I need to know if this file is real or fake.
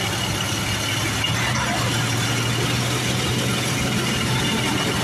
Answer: real